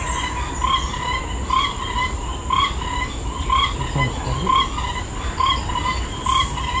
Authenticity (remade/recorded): recorded